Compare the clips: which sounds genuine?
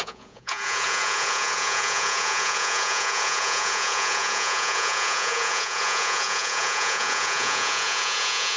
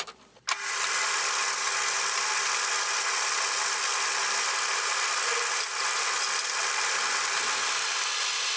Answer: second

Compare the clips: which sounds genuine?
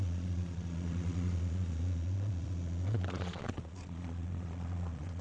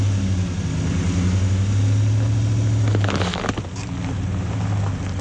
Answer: second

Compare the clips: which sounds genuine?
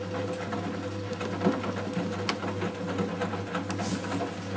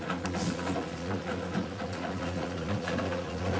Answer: first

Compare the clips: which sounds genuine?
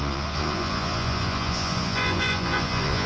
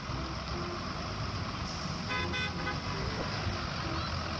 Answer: second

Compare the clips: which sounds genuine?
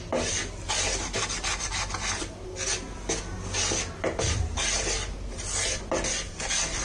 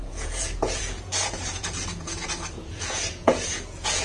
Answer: first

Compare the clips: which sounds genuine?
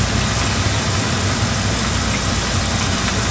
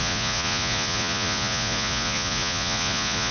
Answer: first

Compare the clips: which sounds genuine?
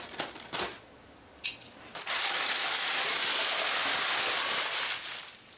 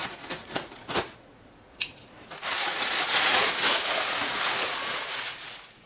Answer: first